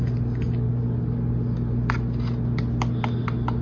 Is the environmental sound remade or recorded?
recorded